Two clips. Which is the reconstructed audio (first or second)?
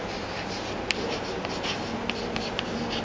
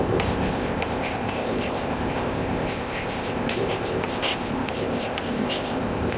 second